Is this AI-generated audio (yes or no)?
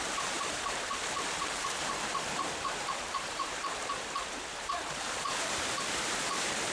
yes